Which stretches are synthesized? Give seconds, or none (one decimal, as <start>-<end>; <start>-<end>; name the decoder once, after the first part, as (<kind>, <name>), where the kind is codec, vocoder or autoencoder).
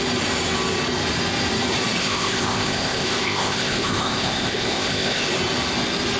2.0-5.3 (codec, ZipCodec)